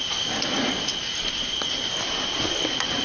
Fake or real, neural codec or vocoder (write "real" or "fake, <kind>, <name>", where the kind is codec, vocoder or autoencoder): real